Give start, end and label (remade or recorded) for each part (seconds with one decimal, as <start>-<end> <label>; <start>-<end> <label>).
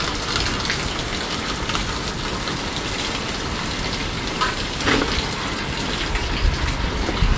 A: 0.0-4.0 recorded; 4.0-4.8 remade; 4.8-7.4 recorded